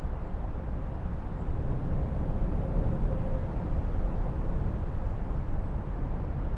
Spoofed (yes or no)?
no